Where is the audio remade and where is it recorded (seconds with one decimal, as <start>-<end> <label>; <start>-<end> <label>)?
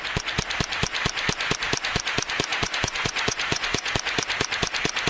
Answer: 0.0-2.5 recorded; 2.5-3.9 remade; 3.9-5.1 recorded